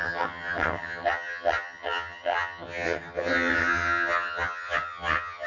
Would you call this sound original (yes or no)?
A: no